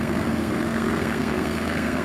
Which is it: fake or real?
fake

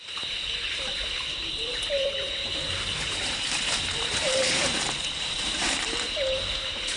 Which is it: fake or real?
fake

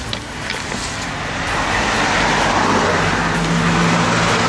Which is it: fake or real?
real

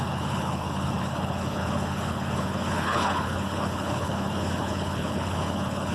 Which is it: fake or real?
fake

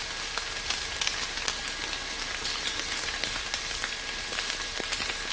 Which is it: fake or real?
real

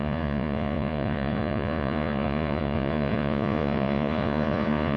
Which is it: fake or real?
fake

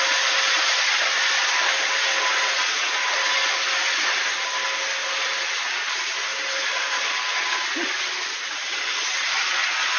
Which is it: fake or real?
real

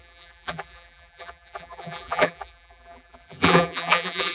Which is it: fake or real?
fake